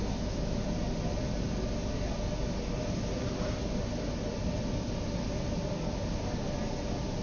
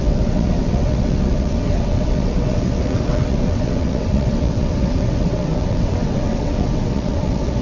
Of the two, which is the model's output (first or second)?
second